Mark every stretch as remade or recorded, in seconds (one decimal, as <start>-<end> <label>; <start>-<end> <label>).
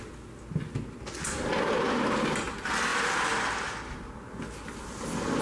0.0-5.4 recorded